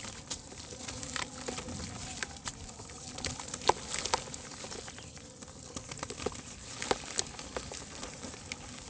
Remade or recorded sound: recorded